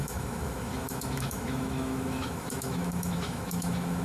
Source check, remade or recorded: remade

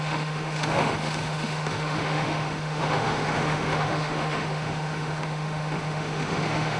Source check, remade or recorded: remade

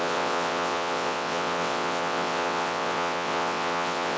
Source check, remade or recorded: remade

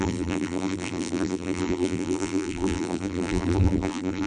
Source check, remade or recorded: remade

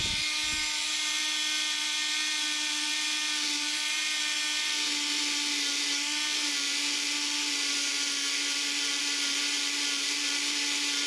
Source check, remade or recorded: recorded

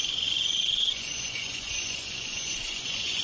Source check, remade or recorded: remade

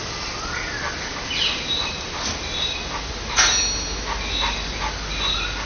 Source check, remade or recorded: recorded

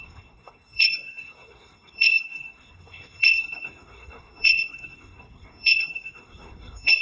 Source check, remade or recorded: remade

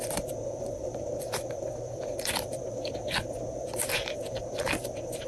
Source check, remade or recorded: remade